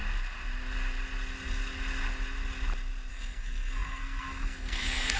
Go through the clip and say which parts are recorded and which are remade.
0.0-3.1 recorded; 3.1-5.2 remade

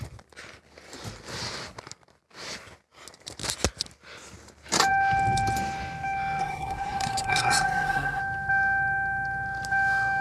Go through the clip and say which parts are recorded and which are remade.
0.0-6.4 recorded; 6.4-8.2 remade; 8.2-10.2 recorded

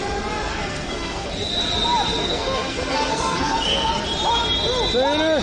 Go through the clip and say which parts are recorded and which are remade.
0.0-0.5 recorded; 0.5-1.3 remade; 1.3-2.2 recorded; 2.2-3.9 remade; 3.9-5.4 recorded

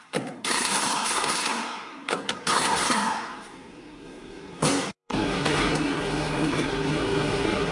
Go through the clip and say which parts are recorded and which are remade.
0.0-7.7 remade

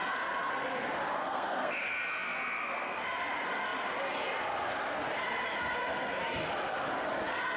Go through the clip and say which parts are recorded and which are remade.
0.0-1.1 recorded; 1.1-1.7 remade; 1.7-7.6 recorded

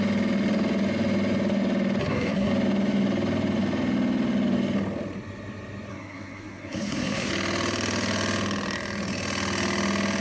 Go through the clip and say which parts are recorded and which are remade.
0.0-2.0 recorded; 2.0-2.5 remade; 2.5-5.9 recorded; 5.9-7.3 remade; 7.3-10.2 recorded

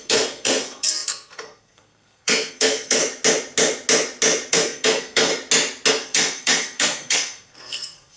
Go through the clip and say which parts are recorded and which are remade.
0.0-3.0 remade; 3.0-4.5 recorded; 4.5-5.3 remade; 5.3-5.9 recorded; 5.9-8.2 remade